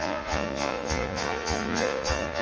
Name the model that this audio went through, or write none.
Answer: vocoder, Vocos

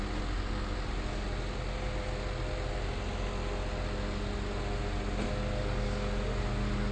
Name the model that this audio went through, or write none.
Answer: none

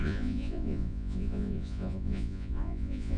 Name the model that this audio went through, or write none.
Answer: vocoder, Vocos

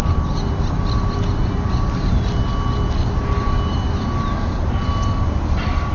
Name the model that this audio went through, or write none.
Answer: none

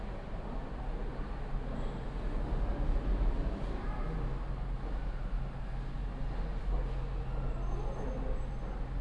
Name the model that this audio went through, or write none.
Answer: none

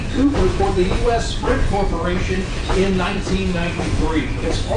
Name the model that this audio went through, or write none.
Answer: vocoder, Vocos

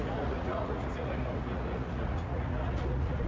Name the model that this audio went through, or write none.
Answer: vocoder, Vocos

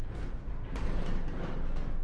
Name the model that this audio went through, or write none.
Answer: none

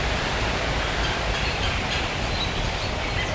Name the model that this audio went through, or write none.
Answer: none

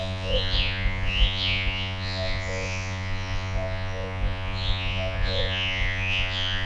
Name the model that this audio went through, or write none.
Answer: vocoder, Vocos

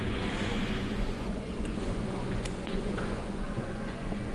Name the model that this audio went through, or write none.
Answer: vocoder, Vocos